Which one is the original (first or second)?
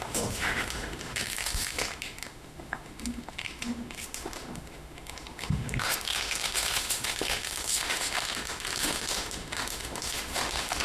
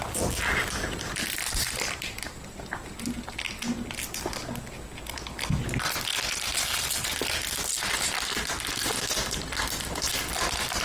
second